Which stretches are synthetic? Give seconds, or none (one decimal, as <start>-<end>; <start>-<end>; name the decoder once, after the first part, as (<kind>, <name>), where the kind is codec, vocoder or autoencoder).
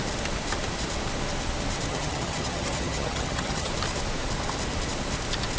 1.9-3.7 (vocoder, HiFi-GAN)